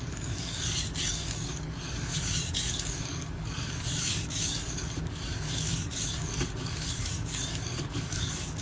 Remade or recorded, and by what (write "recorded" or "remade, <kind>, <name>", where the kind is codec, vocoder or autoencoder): remade, codec, DAC